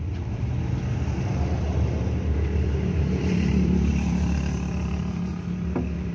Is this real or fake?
real